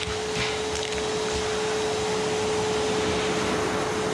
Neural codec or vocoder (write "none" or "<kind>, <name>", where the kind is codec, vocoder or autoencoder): none